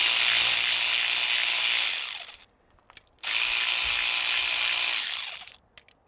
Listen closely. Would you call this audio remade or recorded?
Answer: recorded